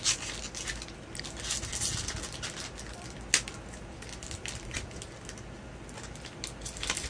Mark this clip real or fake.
real